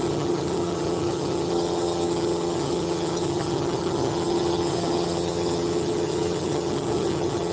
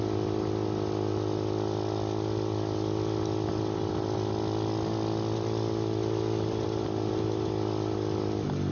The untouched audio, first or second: second